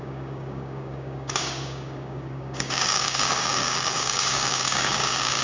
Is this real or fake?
fake